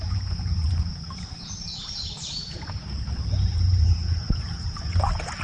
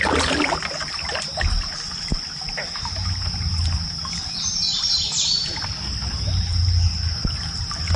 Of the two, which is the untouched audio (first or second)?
second